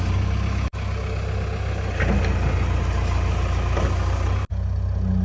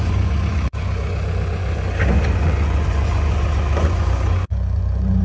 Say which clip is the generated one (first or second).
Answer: second